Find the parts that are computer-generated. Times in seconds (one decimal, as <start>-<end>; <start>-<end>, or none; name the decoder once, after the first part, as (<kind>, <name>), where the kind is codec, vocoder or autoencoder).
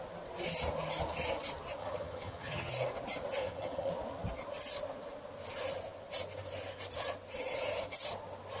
1.8-2.7 (vocoder, HiFi-GAN); 3.4-3.9